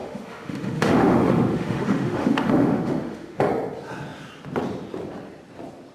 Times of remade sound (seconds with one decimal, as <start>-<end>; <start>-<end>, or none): 0.0-3.5